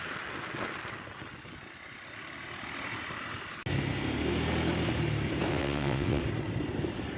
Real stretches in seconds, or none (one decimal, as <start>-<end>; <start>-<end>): 0.0-5.5; 6.2-7.2